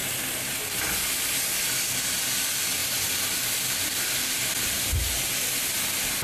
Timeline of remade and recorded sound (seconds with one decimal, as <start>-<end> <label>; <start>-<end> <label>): 0.0-6.2 recorded